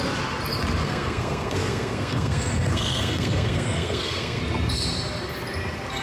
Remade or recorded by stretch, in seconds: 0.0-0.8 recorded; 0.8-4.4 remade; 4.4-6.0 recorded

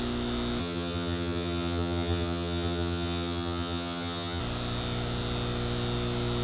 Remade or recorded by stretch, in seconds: 0.0-0.6 recorded; 0.6-4.4 remade; 4.4-6.4 recorded

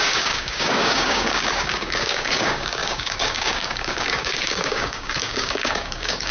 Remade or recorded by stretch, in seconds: 0.0-6.3 remade

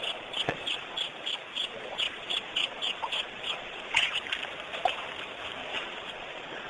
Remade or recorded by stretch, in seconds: 0.0-1.1 remade; 1.1-1.6 recorded; 1.6-4.2 remade; 4.2-5.6 recorded; 5.6-6.7 remade

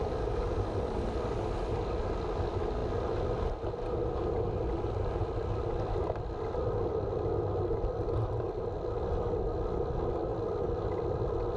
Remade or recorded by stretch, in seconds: 0.0-11.6 recorded

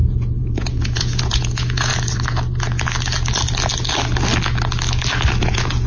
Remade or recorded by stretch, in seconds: 0.0-1.9 remade; 1.9-5.4 recorded; 5.4-5.9 remade

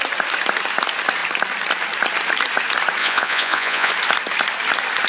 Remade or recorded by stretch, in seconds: 0.0-3.0 recorded; 3.0-3.9 remade; 3.9-5.1 recorded